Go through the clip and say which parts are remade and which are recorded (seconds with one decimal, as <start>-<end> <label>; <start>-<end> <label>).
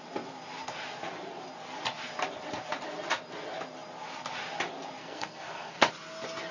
0.0-5.0 recorded; 5.0-5.9 remade; 5.9-6.5 recorded